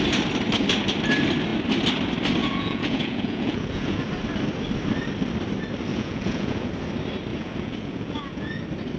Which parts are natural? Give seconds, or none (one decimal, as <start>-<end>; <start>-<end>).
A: 0.0-2.4; 4.1-5.9; 6.7-7.3; 8.6-9.0